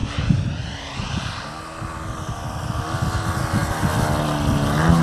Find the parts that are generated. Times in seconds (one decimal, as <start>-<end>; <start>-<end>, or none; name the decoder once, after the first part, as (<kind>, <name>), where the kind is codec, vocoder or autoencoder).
none